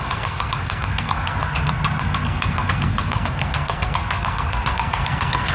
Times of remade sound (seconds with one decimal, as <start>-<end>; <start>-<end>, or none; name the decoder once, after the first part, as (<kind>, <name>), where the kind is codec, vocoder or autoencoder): 0.0-5.5 (codec, SNAC)